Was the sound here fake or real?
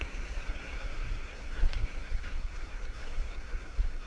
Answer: fake